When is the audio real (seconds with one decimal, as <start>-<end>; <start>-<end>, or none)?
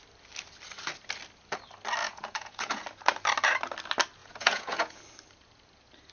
0.0-2.0; 2.8-4.2; 5.0-6.1